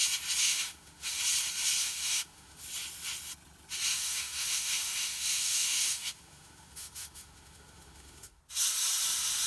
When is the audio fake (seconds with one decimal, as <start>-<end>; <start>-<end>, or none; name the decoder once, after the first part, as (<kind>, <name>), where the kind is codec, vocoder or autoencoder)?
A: 0.4-1.2 (autoencoder, DAC-VAE); 1.8-2.6; 3.9-8.4